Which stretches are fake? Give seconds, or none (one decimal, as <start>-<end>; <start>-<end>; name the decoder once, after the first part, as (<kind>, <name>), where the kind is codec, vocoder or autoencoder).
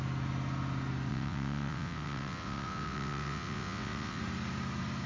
1.1-4.2 (vocoder, WaveNeXt)